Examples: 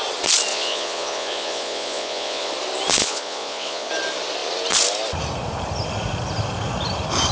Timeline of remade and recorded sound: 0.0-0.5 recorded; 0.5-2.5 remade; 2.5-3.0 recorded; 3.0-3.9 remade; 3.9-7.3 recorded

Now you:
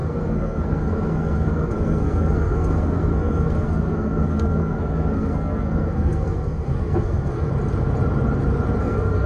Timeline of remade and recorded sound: 0.0-7.5 remade; 7.5-8.8 recorded; 8.8-9.3 remade

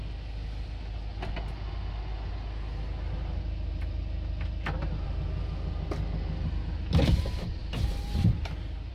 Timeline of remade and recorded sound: 0.0-8.9 recorded

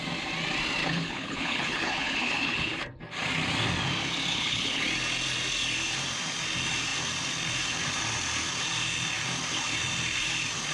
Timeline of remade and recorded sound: 0.0-0.8 recorded; 0.8-2.8 remade; 2.8-4.3 recorded; 4.3-4.8 remade; 4.8-10.7 recorded

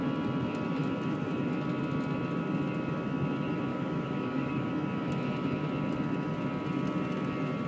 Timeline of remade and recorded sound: 0.0-3.7 recorded; 3.7-4.7 remade; 4.7-7.7 recorded

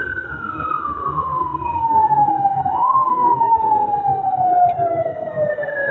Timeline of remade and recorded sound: 0.0-4.5 remade; 4.5-5.0 recorded; 5.0-5.9 remade

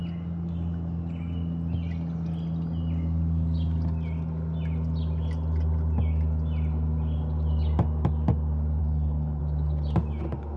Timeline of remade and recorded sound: 0.0-8.8 recorded; 8.8-9.4 remade; 9.4-10.6 recorded

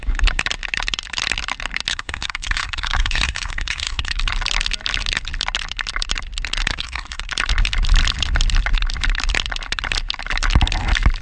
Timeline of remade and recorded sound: 0.0-1.9 recorded; 1.9-4.2 remade; 4.2-6.7 recorded; 6.7-7.3 remade; 7.3-11.2 recorded